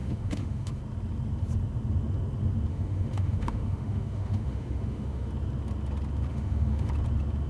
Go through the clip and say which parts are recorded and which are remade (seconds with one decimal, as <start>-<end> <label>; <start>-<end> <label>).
0.0-0.8 remade; 0.8-2.7 recorded; 2.7-5.3 remade; 5.3-6.3 recorded; 6.3-6.9 remade; 6.9-7.5 recorded